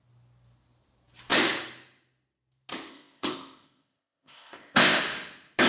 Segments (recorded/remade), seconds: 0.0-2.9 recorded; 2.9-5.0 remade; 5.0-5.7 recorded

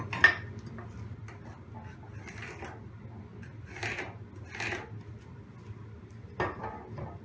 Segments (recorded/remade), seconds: 0.0-7.2 recorded

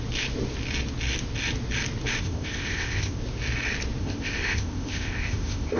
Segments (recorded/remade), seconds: 0.0-2.2 recorded; 2.2-3.2 remade; 3.2-4.0 recorded; 4.0-5.8 remade

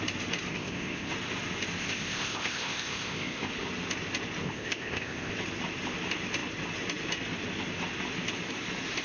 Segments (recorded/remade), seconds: 0.0-0.5 recorded; 0.5-1.1 remade; 1.1-1.8 recorded; 1.8-3.5 remade; 3.5-4.4 recorded; 4.4-5.3 remade; 5.3-9.0 recorded